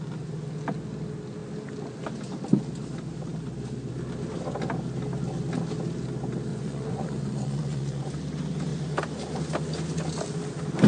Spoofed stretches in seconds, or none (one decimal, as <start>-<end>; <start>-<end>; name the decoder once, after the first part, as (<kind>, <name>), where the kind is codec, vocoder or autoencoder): 6.5-8.1 (vocoder, Vocos)